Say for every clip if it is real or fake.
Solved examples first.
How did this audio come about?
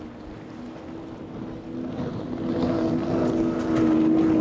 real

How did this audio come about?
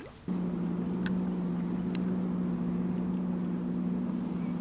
real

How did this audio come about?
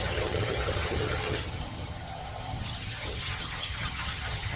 fake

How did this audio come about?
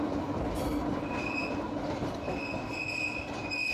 real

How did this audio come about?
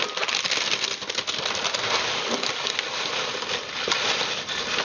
real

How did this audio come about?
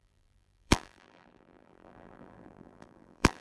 fake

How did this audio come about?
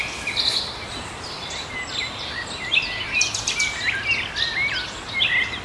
real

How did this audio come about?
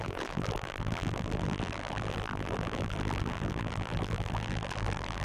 fake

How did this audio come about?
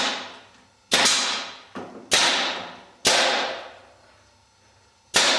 real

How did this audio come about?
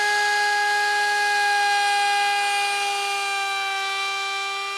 real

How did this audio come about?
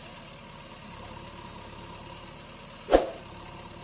real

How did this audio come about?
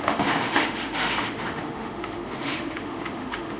fake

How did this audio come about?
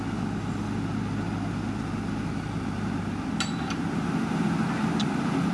real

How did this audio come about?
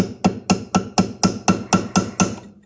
real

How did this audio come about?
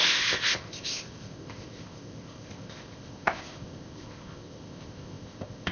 fake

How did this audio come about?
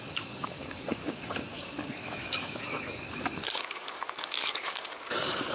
fake